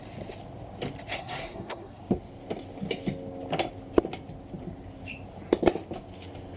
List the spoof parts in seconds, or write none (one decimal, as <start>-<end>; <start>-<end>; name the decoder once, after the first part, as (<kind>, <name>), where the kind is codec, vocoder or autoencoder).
1.1-2.0 (codec, SNAC)